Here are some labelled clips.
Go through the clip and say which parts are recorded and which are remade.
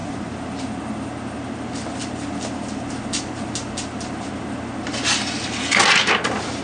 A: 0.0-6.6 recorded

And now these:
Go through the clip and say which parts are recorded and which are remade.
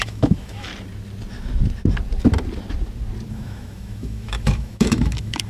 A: 0.0-0.7 remade; 0.7-3.3 recorded; 3.3-5.5 remade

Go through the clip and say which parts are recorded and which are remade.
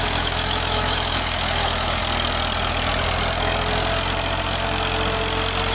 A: 0.0-2.0 remade; 2.0-5.7 recorded